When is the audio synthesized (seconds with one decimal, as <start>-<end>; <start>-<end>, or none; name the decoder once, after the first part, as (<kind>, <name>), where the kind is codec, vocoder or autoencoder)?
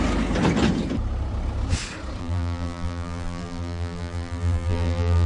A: 2.2-5.3 (vocoder, BigVGAN v2)